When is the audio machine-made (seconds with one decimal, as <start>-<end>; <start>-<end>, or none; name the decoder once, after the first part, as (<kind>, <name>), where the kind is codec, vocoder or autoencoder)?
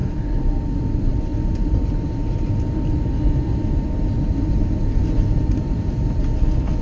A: 1.3-4.6 (vocoder, BigVGAN v2); 5.0-6.2